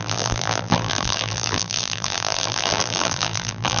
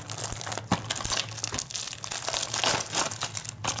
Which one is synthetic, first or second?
first